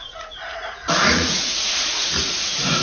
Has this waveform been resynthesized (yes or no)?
yes